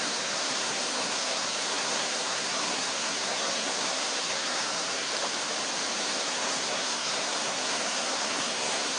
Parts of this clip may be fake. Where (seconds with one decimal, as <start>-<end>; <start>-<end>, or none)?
0.0-5.1; 6.0-9.0

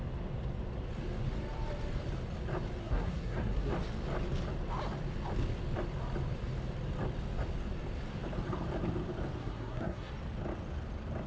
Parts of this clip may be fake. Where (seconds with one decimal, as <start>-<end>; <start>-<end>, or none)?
2.8-3.7; 9.4-10.1

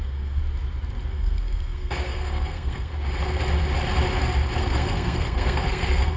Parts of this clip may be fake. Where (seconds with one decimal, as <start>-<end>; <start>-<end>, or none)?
0.0-0.4; 1.1-2.9; 4.6-6.2